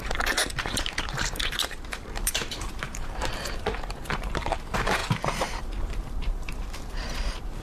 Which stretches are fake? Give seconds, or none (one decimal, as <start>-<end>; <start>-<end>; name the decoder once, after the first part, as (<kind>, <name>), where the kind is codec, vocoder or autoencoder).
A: 0.0-7.6 (vocoder, BigVGAN v2)